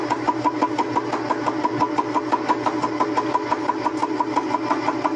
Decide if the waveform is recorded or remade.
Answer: recorded